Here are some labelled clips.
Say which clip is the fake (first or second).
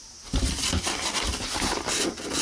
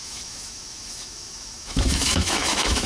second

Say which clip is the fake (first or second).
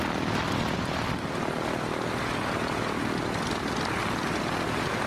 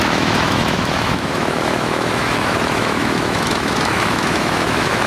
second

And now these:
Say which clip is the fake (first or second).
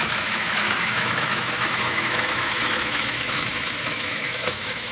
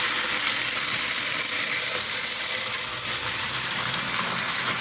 first